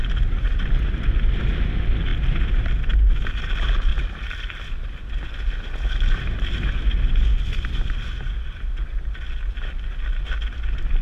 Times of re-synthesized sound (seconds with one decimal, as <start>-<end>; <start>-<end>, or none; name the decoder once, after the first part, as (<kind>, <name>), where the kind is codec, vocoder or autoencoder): 3.9-4.7 (vocoder, BigVGAN v2)